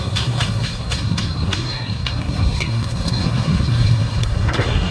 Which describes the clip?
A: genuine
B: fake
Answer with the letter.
B